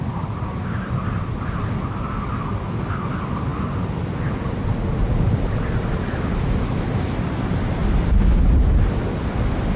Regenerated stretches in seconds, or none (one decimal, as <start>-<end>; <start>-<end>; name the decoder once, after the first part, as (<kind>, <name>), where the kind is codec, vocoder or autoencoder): none